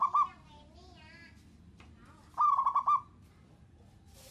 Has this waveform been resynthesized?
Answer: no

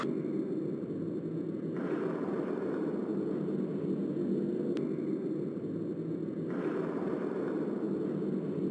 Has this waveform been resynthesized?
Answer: no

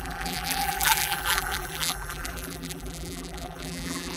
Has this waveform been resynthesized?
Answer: yes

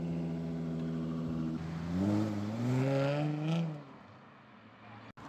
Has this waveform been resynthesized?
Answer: no